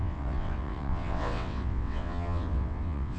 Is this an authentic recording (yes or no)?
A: no